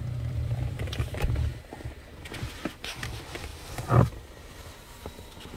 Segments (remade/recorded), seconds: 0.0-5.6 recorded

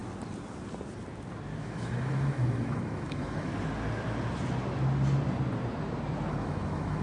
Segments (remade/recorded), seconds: 0.0-1.6 recorded; 1.6-3.5 remade; 3.5-6.3 recorded; 6.3-7.0 remade

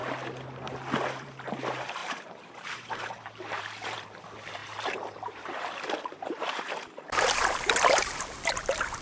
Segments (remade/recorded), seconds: 0.0-1.2 recorded; 1.2-9.0 remade